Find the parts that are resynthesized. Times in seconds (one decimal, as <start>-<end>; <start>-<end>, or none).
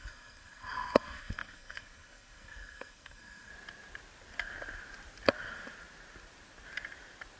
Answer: 0.0-3.5